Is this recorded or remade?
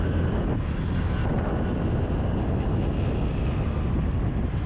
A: recorded